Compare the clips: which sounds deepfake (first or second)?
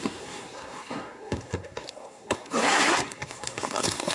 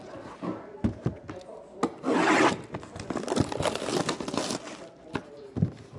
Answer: first